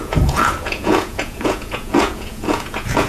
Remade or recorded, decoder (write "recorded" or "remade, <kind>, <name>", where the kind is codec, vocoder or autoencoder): remade, vocoder, Vocos